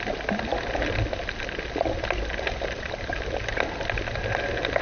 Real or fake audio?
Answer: real